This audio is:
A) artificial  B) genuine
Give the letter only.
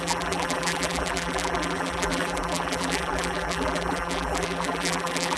A